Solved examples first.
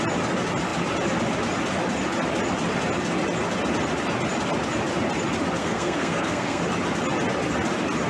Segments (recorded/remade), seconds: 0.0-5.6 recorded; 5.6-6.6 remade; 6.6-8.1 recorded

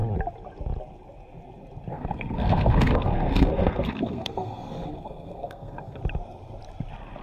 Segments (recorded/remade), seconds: 0.0-1.9 recorded; 1.9-6.0 remade; 6.0-7.2 recorded

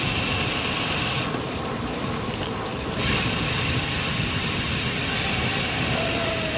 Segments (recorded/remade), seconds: 0.0-6.6 recorded

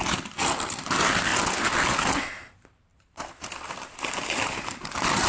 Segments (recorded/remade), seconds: 0.0-2.9 recorded; 2.9-5.3 remade

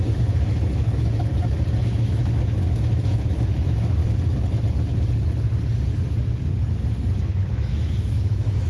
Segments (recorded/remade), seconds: 0.0-1.3 remade; 1.3-1.8 recorded; 1.8-4.0 remade; 4.0-7.2 recorded; 7.2-8.7 remade

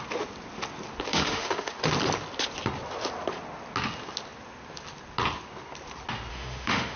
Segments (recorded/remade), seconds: 0.0-1.1 recorded; 1.1-1.7 remade; 1.7-6.3 recorded; 6.3-7.0 remade

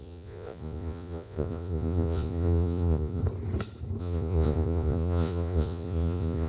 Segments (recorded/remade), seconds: 0.0-3.2 remade; 3.2-4.0 recorded; 4.0-6.5 remade